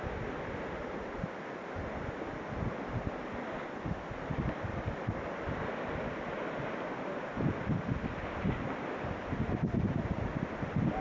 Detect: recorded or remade recorded